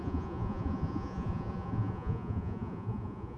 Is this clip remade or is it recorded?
remade